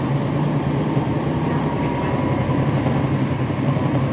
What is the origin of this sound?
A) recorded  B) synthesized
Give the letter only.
B